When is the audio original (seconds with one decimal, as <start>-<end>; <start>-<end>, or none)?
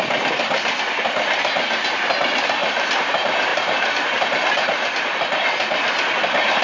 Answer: 0.0-2.6; 3.1-3.5; 4.5-6.6